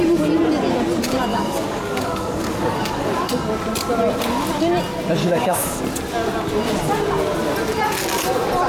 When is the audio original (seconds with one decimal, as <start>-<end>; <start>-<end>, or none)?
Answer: 0.0-1.3; 3.1-5.2; 5.8-8.7